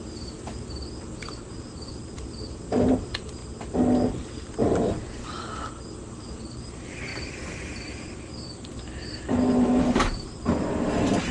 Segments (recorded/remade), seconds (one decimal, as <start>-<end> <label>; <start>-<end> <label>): 0.0-3.4 remade; 3.4-6.2 recorded; 6.2-11.3 remade